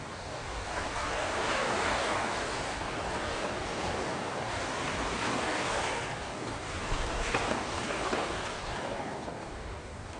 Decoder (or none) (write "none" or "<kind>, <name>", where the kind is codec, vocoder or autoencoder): codec, DAC